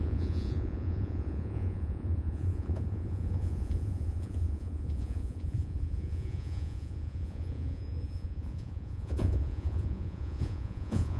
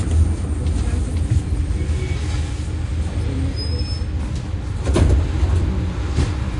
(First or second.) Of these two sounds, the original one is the second